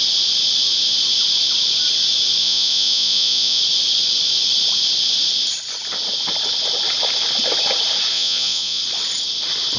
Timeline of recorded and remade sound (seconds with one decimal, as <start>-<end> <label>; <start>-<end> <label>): 0.0-2.4 recorded; 2.4-3.6 remade; 3.6-8.1 recorded; 8.1-8.8 remade; 8.8-9.8 recorded